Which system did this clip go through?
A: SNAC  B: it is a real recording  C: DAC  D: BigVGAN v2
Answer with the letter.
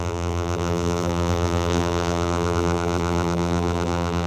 D